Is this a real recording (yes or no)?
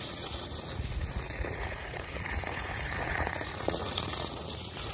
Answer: no